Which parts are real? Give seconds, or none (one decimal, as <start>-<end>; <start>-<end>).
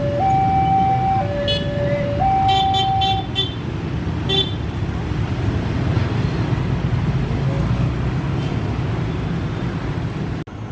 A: 0.0-10.7